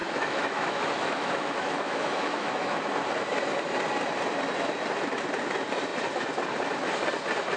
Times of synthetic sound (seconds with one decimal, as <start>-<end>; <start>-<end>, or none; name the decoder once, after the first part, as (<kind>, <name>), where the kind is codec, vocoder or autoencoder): 0.0-2.8 (autoencoder, DAC-VAE)